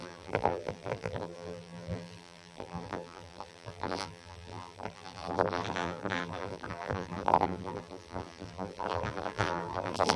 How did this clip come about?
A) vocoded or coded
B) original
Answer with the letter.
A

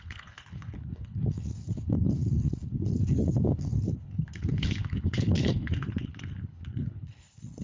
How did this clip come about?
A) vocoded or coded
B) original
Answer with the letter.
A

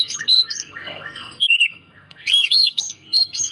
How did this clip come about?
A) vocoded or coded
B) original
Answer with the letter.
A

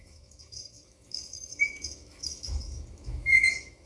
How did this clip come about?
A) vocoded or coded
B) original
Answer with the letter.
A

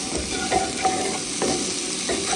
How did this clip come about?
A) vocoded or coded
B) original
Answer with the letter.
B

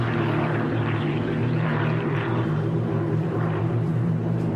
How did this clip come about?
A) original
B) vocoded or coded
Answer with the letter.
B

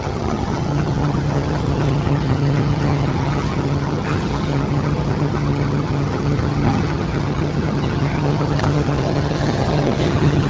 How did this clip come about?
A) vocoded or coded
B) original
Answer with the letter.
A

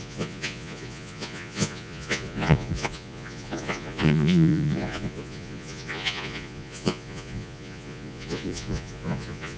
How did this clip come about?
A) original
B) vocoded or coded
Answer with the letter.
B